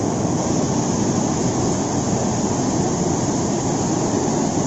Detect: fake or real real